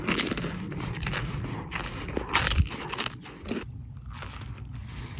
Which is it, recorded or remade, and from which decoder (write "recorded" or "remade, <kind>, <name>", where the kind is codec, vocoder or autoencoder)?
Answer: recorded